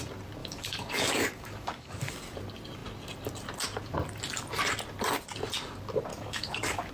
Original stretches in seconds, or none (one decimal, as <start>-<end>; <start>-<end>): 0.0-0.4; 2.1-6.1